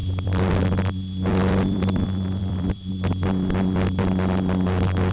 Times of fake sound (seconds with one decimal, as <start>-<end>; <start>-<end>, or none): 0.0-0.6; 1.3-2.9

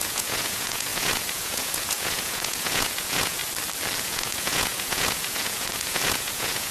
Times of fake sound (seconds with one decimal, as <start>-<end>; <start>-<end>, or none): 0.0-3.4; 4.0-6.7